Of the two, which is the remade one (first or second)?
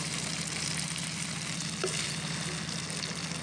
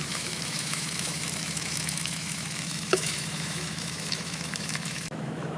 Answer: second